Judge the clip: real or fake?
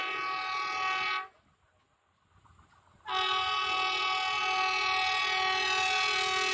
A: real